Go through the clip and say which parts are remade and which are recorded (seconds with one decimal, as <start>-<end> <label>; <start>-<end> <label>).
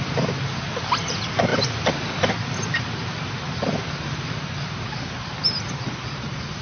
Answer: 0.0-1.5 recorded; 1.5-2.3 remade; 2.3-6.6 recorded